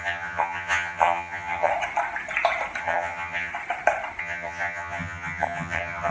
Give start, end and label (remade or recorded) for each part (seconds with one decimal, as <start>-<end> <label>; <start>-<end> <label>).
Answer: 0.0-1.7 remade; 1.7-2.8 recorded; 2.8-3.5 remade; 3.5-4.2 recorded; 4.2-6.1 remade